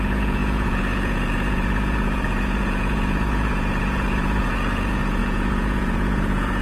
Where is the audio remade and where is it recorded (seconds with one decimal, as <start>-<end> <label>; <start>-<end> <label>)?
0.0-6.6 remade